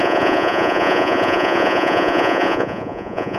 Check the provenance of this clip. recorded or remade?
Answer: remade